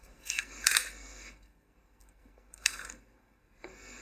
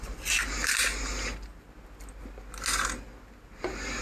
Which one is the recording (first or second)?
second